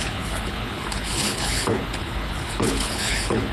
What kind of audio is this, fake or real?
fake